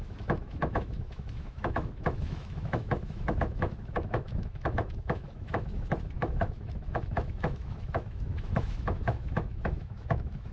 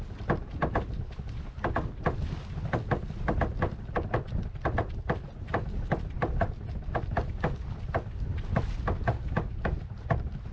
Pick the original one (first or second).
second